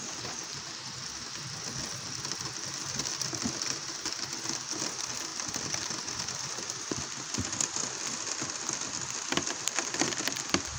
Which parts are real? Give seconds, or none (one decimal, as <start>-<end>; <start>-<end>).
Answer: 0.0-10.8